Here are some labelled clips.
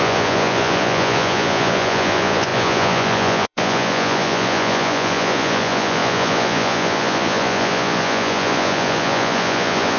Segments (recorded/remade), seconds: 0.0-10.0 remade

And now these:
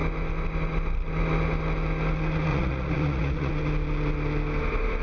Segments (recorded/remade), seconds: 0.0-2.5 recorded; 2.5-3.5 remade; 3.5-5.0 recorded

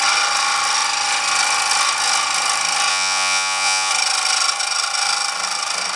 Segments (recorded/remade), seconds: 0.0-2.9 recorded; 2.9-3.9 remade; 3.9-6.0 recorded

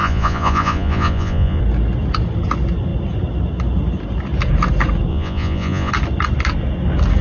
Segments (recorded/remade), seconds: 0.0-1.6 remade; 1.6-5.1 recorded; 5.1-5.9 remade; 5.9-7.2 recorded

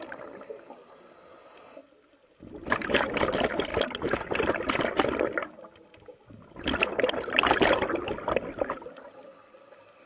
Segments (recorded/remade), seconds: 0.0-10.1 recorded

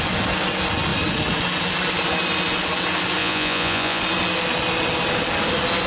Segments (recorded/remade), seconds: 0.0-3.2 recorded; 3.2-4.0 remade; 4.0-5.9 recorded

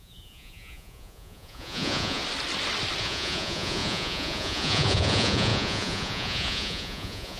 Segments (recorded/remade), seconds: 0.0-2.2 remade; 2.2-3.0 recorded; 3.0-7.4 remade